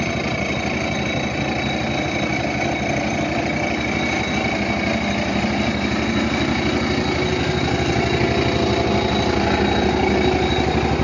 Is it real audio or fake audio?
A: real